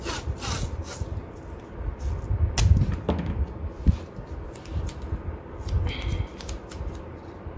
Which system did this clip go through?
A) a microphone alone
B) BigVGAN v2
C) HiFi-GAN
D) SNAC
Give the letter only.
A